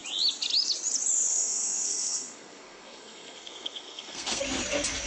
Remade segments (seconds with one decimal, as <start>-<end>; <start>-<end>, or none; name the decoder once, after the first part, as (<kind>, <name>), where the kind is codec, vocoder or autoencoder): 1.3-4.4 (codec, SNAC)